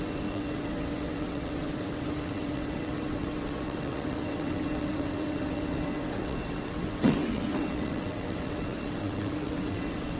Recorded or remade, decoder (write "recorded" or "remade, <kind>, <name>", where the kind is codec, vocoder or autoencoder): remade, vocoder, WaveNeXt